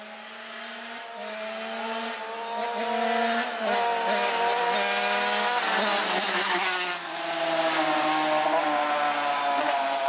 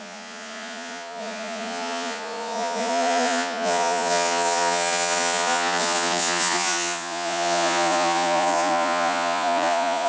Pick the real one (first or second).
first